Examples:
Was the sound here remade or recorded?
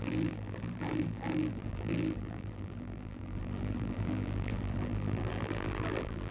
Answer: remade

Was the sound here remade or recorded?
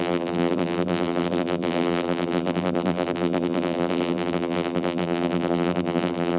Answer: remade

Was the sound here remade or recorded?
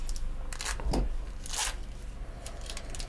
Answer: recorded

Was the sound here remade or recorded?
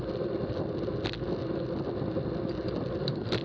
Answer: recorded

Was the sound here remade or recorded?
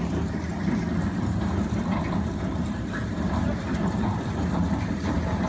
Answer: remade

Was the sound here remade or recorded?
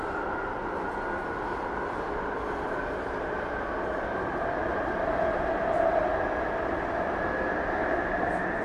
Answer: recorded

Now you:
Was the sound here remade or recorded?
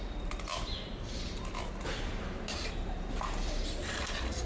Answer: recorded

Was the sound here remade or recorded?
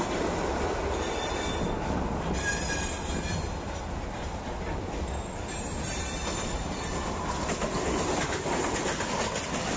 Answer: recorded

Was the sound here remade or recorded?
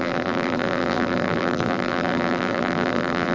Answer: remade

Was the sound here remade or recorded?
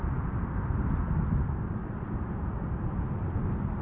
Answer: recorded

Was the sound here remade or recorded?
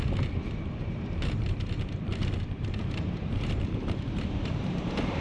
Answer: remade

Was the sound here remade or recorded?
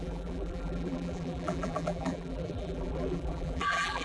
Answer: remade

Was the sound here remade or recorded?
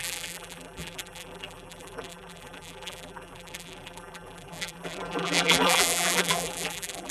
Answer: remade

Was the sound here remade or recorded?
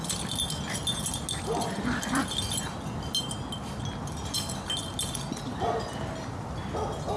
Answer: recorded